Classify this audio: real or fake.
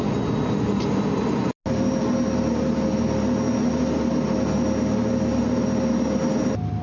real